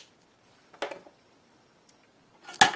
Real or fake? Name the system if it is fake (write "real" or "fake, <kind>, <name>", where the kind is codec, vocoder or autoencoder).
real